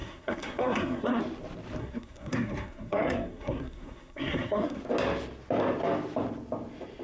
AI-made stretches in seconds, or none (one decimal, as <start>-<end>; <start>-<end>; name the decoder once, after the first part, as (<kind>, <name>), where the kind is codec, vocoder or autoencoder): 0.0-1.2 (codec, SNAC); 1.8-4.8